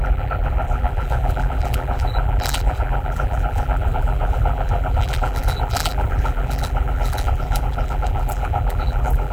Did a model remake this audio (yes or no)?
yes